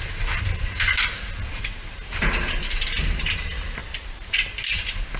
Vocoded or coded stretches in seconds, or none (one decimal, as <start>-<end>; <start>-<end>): none